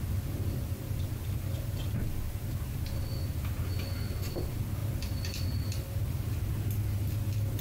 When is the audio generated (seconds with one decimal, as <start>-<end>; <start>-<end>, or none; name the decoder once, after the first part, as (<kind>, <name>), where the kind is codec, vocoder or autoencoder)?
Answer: none